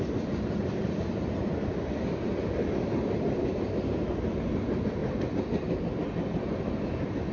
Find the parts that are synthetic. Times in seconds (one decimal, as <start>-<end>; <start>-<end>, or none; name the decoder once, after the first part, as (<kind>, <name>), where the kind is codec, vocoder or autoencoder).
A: none